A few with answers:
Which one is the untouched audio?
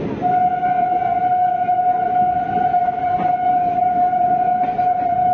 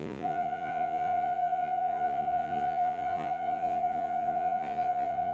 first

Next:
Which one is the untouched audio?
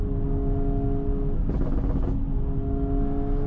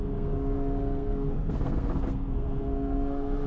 first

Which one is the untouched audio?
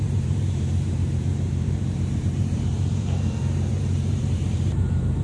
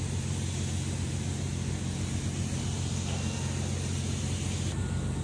second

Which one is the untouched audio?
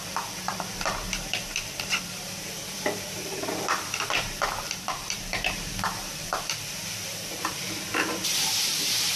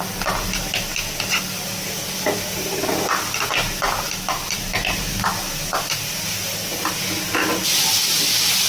second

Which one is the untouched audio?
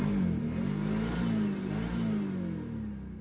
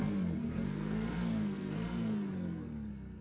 first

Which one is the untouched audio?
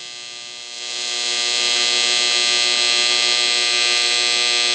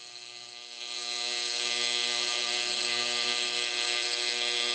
first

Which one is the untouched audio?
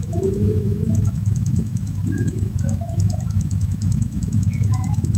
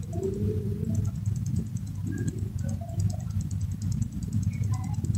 second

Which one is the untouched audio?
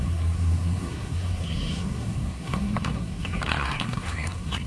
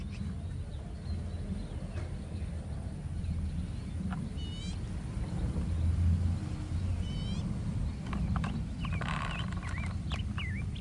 second